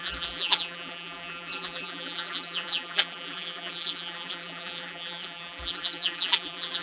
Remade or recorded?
remade